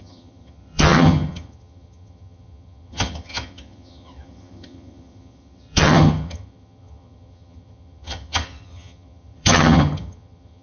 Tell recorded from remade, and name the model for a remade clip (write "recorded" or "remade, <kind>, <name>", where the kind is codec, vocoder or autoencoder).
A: remade, vocoder, HiFi-GAN